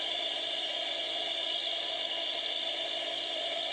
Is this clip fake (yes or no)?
no